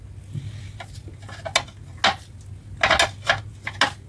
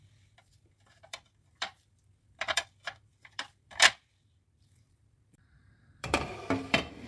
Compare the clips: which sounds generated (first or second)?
second